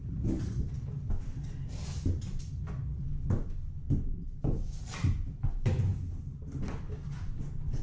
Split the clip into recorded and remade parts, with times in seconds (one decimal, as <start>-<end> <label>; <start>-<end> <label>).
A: 0.0-7.8 recorded